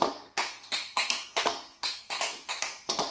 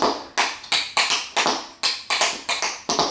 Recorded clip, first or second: second